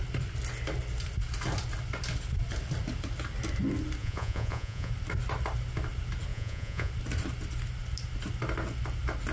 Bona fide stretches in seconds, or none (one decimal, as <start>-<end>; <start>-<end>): 0.0-4.0; 4.9-6.3; 6.9-9.3